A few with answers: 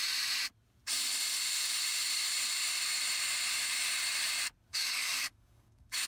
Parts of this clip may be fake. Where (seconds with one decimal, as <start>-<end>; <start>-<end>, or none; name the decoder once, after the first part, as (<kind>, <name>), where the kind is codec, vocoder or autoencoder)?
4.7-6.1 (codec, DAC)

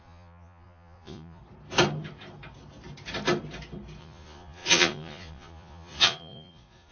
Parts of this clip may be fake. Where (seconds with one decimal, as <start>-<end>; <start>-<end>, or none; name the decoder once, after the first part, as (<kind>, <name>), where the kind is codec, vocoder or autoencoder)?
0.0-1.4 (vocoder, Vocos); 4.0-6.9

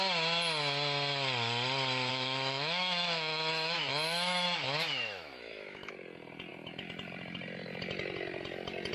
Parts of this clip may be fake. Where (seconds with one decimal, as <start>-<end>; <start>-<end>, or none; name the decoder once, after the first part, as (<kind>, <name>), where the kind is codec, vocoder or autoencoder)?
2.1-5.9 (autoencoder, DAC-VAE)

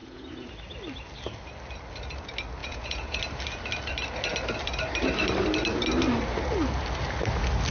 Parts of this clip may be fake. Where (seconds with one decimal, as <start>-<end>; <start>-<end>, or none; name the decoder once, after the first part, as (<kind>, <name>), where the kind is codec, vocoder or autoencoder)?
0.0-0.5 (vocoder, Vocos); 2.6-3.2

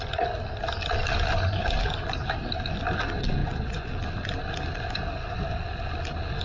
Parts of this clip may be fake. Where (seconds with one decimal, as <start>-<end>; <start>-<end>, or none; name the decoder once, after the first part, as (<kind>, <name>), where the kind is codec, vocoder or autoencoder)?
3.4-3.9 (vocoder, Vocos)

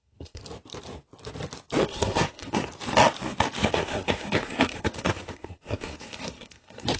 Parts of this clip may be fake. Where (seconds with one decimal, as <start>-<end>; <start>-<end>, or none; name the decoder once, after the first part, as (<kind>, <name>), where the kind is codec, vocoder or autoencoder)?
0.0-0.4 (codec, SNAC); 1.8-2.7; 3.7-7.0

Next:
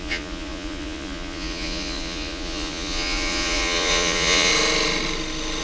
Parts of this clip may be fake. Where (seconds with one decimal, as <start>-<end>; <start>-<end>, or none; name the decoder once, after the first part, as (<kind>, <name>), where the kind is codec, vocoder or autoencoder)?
0.0-4.5 (vocoder, Vocos)

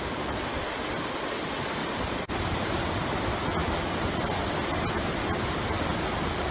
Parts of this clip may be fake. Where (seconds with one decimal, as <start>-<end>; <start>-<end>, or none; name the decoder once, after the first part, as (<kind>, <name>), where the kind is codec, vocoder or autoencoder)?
none